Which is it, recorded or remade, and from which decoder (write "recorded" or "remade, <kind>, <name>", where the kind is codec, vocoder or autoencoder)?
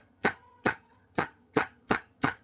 remade, vocoder, HiFi-GAN